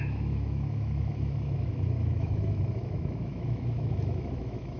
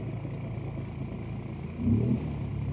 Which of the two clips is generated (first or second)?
first